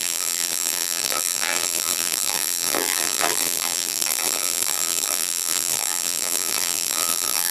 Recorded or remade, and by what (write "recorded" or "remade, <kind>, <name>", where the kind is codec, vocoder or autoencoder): remade, vocoder, BigVGAN v2